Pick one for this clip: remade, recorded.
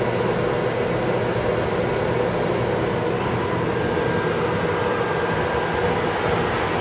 recorded